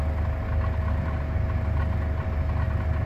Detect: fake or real real